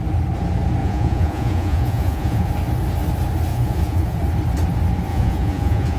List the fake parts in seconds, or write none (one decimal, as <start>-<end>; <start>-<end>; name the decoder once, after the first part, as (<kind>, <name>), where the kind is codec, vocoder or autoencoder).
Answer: 0.8-2.5 (vocoder, Vocos); 3.5-4.2; 5.1-6.0